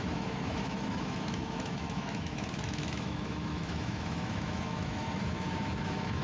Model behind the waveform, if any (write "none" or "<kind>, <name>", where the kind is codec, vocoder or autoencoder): autoencoder, DAC-VAE